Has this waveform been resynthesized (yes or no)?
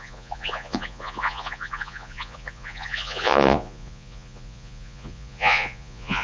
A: yes